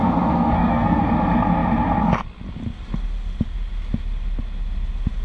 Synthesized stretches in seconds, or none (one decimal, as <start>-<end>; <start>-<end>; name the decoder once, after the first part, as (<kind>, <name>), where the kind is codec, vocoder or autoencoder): 0.0-1.0 (codec, SNAC)

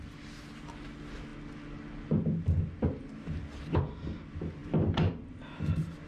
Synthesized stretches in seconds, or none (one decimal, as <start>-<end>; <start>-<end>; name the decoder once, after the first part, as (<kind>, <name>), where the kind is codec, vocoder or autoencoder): none

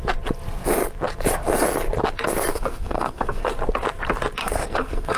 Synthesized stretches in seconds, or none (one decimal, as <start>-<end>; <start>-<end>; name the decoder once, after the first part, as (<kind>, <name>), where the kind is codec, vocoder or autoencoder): 2.5-3.5 (codec, SNAC); 4.4-5.2

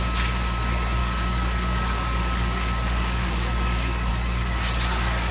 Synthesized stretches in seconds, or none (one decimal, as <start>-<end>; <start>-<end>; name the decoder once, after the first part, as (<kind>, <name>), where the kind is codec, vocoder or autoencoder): 1.0-4.1 (codec, DAC)

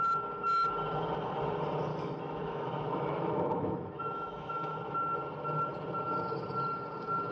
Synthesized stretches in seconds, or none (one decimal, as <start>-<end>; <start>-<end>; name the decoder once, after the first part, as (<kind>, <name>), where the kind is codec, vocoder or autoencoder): 1.9-4.8 (autoencoder, DAC-VAE)

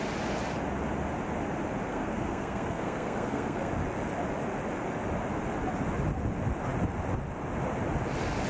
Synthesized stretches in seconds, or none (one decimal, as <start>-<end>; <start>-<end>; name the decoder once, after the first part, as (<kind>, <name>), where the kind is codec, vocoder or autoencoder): 1.9-3.7 (codec, SNAC)

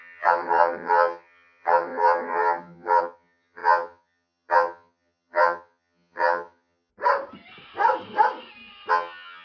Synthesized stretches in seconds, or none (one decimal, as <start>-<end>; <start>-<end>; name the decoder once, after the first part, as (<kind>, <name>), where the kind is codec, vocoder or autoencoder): 0.0-6.9 (vocoder, HiFi-GAN); 8.9-9.4